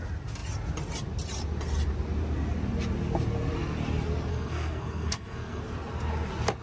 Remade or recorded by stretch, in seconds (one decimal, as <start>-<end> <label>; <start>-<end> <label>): 0.0-4.3 recorded; 4.3-5.6 remade; 5.6-6.6 recorded